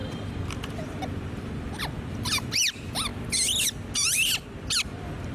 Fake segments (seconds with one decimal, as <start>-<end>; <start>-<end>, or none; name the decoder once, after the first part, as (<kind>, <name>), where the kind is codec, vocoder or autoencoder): 0.0-3.1 (vocoder, BigVGAN v2); 3.9-5.3